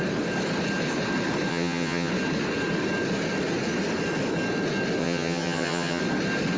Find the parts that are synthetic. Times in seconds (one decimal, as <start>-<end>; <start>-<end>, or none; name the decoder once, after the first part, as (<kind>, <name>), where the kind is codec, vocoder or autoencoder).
1.5-2.1 (vocoder, HiFi-GAN); 5.0-6.0